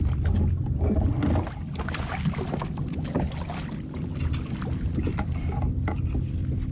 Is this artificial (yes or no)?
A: no